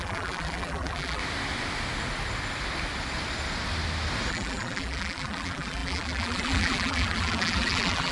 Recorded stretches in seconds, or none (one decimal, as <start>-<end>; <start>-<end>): 1.2-4.3